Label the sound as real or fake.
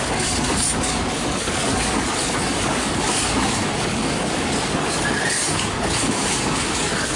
fake